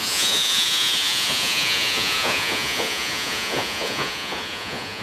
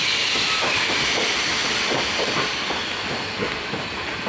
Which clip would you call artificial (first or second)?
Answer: first